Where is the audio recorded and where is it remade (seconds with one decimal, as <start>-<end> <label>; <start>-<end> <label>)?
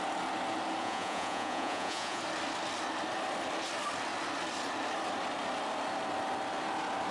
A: 0.0-0.8 recorded; 0.8-2.2 remade; 2.2-7.1 recorded